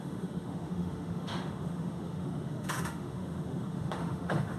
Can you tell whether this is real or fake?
fake